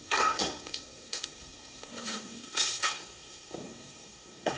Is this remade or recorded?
remade